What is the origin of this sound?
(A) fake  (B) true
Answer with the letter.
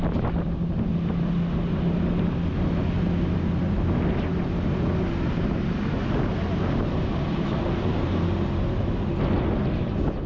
B